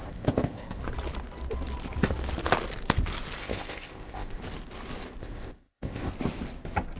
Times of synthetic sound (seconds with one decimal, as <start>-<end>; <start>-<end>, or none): 0.0-0.8; 3.4-4.4; 5.2-6.1